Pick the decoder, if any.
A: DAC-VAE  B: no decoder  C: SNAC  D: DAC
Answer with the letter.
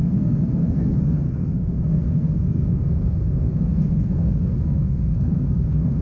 C